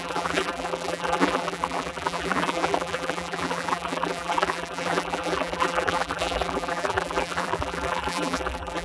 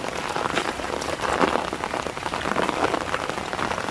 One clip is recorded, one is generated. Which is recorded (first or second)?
second